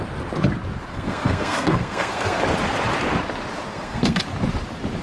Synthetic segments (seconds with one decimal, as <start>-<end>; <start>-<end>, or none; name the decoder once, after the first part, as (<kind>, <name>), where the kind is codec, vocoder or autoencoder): 0.9-2.4 (codec, SNAC); 3.7-4.2